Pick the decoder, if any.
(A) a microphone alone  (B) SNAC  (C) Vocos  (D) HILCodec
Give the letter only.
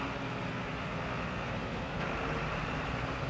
A